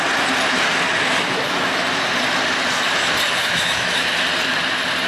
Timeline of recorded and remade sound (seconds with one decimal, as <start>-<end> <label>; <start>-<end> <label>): 0.0-1.1 recorded; 1.1-1.8 remade; 1.8-3.4 recorded; 3.4-4.1 remade; 4.1-5.1 recorded